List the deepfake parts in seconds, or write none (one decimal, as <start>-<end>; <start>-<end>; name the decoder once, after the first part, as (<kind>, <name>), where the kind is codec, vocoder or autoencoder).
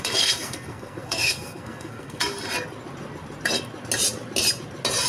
0.0-2.2 (codec, SNAC)